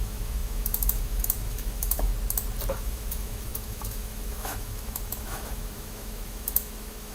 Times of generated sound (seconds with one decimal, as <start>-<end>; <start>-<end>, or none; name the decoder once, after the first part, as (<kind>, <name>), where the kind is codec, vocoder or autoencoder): 0.0-2.1 (autoencoder, DAC-VAE); 2.7-7.1